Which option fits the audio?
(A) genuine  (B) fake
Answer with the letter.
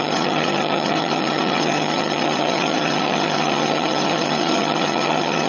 B